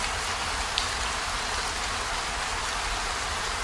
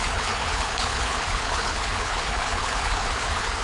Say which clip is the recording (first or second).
first